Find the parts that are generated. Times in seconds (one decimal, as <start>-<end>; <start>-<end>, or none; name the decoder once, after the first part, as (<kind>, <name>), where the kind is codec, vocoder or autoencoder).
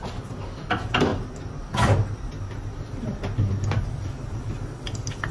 none